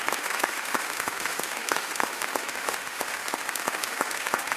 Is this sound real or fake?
fake